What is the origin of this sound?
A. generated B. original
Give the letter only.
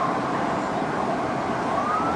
B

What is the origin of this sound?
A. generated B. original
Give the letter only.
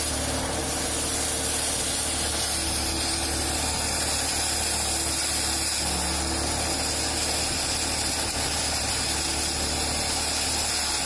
B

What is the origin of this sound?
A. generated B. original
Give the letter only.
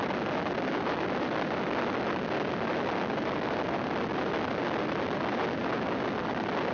B